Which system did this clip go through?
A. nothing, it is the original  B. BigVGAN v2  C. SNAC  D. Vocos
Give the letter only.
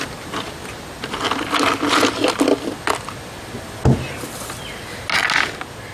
A